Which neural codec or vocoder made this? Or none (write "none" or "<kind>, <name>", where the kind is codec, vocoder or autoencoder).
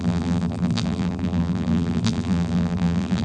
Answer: vocoder, BigVGAN v2